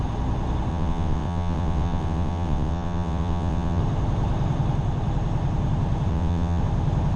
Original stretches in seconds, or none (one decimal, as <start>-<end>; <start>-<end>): 0.0-0.7; 3.8-6.1; 6.6-7.2